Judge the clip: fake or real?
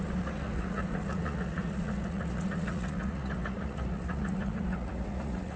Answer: fake